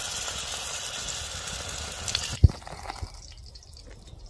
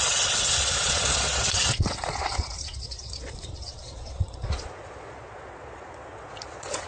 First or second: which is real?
first